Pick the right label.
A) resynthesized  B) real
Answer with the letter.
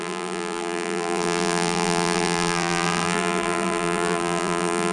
A